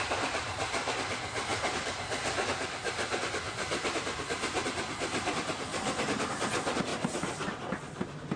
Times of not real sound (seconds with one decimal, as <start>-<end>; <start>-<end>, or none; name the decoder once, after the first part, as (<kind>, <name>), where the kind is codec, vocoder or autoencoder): none